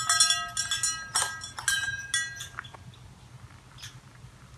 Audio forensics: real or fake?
real